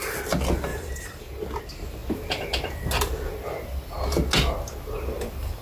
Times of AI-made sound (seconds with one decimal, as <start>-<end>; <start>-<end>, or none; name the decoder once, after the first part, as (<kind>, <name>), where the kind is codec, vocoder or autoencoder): 0.7-1.2 (vocoder, BigVGAN v2)